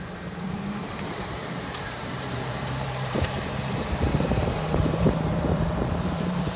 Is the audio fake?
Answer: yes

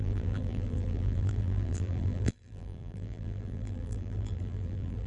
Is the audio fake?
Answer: yes